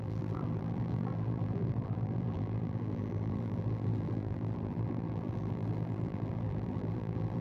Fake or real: fake